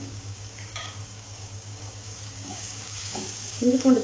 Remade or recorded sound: remade